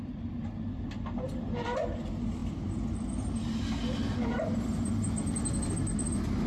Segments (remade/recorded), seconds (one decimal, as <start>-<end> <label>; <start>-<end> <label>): 0.0-6.5 recorded

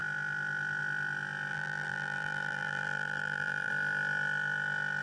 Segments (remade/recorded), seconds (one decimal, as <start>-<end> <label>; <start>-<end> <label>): 0.0-1.5 recorded; 1.5-3.7 remade; 3.7-5.0 recorded

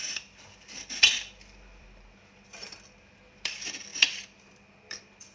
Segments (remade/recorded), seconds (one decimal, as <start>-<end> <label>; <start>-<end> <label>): 0.0-5.3 remade